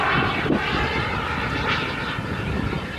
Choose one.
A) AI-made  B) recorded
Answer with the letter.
B